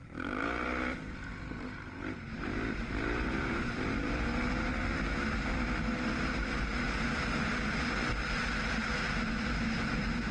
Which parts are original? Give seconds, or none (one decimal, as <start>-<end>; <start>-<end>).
4.7-9.2